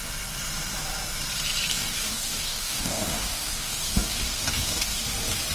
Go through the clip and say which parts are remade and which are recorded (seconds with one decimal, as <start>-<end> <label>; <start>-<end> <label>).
0.0-1.7 recorded; 1.7-5.0 remade; 5.0-5.5 recorded